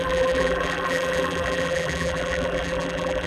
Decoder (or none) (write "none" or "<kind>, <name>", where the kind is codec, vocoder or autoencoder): vocoder, BigVGAN v2